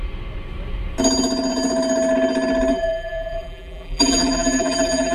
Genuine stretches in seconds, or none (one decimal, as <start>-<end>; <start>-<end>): 0.0-2.7